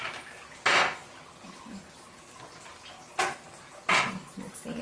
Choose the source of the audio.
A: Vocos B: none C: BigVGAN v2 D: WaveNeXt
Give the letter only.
B